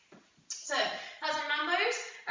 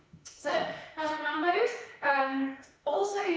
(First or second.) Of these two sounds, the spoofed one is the second